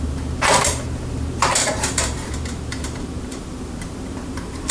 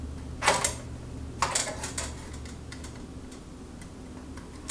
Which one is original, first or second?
second